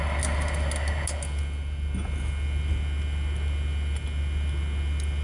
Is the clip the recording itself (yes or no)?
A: yes